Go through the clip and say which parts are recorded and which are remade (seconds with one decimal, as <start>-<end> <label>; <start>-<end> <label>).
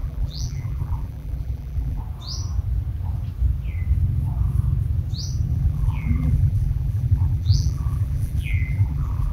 0.0-2.0 remade; 2.0-5.5 recorded; 5.5-9.3 remade